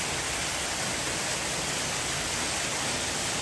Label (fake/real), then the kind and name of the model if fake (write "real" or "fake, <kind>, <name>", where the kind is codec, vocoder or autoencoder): real